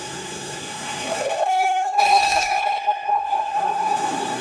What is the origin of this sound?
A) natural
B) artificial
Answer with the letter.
B